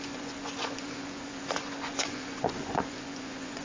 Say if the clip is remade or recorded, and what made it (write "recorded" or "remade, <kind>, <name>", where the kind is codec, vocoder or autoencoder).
remade, vocoder, Vocos